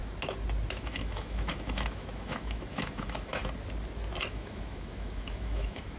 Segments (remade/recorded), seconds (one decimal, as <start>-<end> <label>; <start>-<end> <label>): 0.0-0.7 recorded; 0.7-3.4 remade; 3.4-4.3 recorded; 4.3-6.0 remade